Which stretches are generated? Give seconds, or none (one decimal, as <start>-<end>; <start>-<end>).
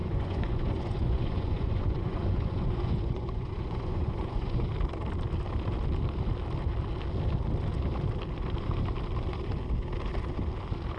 0.0-4.7